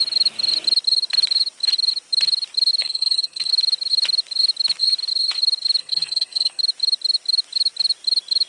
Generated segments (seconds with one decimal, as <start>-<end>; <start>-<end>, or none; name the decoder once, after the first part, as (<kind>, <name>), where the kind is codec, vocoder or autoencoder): 2.8-3.5 (codec, SNAC); 5.8-6.6